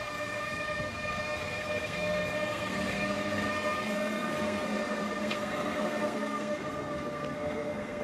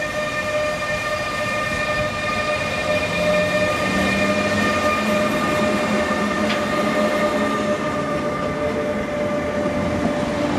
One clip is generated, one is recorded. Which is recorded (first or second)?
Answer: second